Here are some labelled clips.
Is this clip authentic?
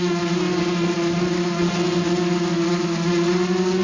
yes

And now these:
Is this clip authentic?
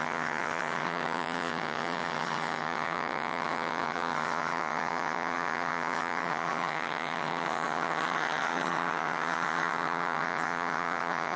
no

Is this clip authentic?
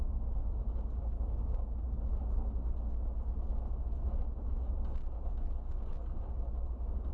yes